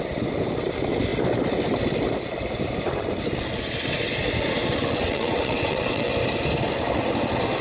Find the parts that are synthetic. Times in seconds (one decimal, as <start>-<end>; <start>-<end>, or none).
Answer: 4.8-6.1